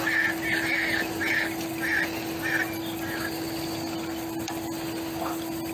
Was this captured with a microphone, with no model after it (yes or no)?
yes